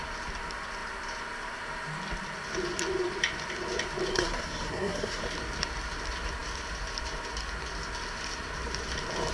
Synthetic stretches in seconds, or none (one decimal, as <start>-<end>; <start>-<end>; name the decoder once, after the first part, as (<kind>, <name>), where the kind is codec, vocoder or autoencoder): 4.1-5.2 (codec, SNAC)